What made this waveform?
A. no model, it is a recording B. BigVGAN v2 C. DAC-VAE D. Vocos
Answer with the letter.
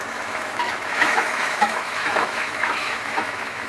C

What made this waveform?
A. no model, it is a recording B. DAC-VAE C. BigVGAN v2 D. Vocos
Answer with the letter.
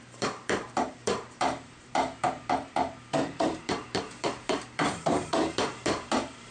C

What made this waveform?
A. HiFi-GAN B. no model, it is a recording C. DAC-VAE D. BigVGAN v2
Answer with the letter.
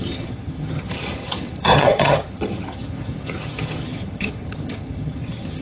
A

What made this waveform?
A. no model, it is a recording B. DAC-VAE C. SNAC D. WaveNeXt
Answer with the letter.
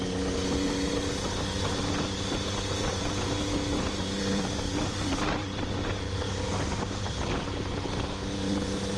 A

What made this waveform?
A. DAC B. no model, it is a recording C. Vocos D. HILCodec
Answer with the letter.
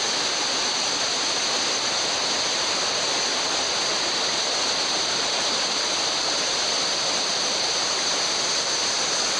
B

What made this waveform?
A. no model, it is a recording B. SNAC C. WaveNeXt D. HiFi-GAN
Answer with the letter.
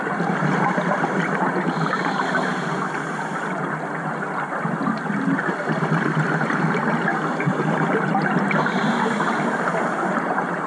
A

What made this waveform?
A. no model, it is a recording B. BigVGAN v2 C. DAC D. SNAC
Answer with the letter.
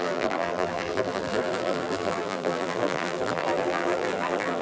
B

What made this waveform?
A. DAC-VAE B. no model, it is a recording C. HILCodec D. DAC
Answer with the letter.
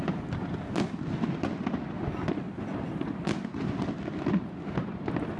B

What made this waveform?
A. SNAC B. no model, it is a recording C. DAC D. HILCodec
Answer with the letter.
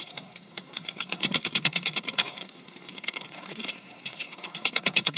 A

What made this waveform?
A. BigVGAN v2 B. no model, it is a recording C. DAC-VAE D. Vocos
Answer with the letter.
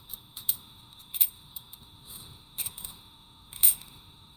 C